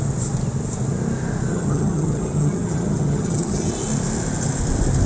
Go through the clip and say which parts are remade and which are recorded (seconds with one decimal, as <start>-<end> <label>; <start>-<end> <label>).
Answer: 0.0-1.5 recorded; 1.5-3.7 remade; 3.7-5.1 recorded